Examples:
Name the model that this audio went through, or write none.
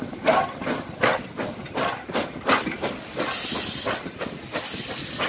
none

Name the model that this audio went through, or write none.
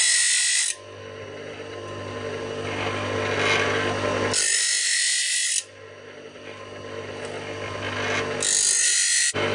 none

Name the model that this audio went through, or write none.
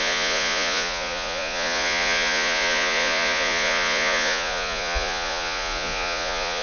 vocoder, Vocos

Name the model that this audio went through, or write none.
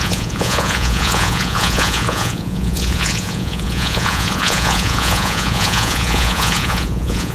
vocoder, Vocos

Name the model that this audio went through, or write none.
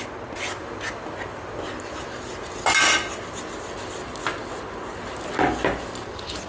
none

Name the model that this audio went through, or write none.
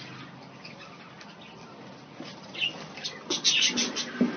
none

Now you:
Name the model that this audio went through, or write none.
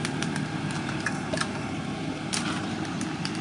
vocoder, BigVGAN v2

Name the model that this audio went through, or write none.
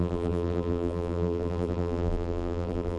vocoder, BigVGAN v2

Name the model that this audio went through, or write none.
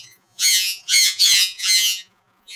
vocoder, Vocos